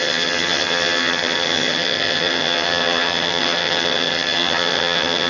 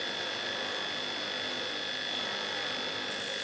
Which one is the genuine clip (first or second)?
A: second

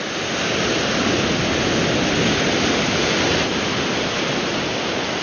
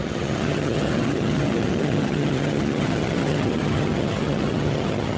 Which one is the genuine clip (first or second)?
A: first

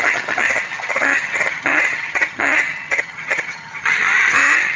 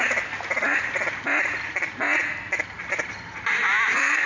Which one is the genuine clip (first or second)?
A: second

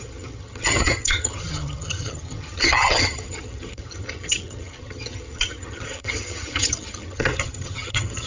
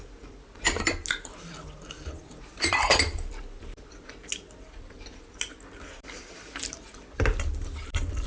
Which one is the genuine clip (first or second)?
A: second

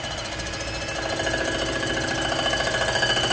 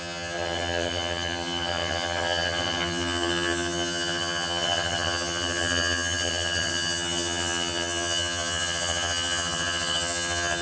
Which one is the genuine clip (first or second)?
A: first